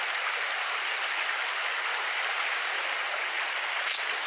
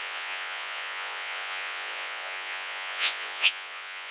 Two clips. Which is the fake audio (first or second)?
second